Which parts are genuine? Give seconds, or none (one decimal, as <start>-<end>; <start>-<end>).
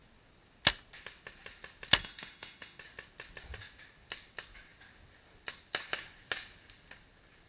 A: 0.0-2.0; 2.8-7.5